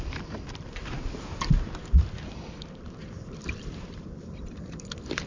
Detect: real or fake fake